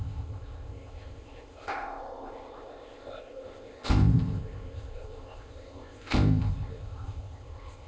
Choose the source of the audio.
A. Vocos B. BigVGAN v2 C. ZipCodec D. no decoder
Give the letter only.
C